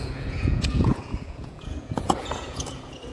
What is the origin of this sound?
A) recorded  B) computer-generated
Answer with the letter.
B